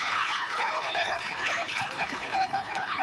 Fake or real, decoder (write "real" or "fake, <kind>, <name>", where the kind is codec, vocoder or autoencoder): fake, codec, HILCodec